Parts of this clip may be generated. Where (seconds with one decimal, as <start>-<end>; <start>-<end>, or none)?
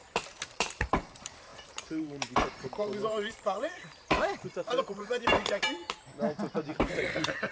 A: 0.0-5.8; 6.8-7.5